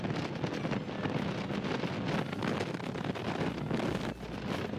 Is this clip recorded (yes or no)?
yes